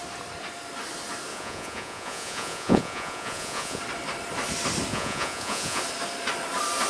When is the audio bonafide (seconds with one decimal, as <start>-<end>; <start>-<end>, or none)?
0.0-1.3; 3.8-4.9; 5.8-6.9